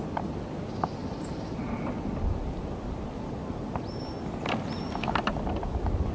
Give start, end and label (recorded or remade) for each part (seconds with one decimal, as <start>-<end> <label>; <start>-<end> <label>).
0.0-6.1 recorded